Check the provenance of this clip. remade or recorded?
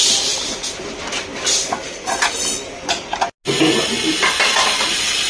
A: recorded